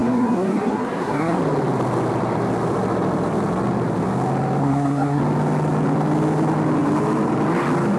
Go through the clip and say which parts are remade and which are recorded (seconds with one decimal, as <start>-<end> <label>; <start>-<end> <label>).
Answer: 0.0-1.4 remade; 1.4-4.6 recorded; 4.6-5.2 remade; 5.2-8.0 recorded